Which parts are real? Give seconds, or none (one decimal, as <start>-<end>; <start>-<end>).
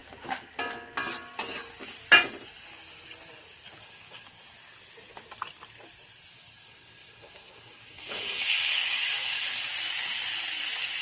0.0-3.8; 4.4-6.3; 9.7-11.0